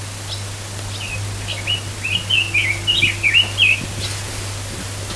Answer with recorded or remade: recorded